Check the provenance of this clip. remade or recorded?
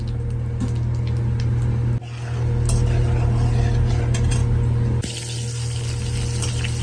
recorded